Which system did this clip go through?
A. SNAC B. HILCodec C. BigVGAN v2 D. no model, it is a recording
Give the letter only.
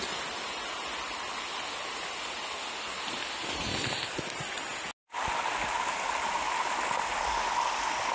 D